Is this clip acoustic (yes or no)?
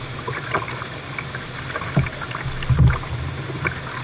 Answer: yes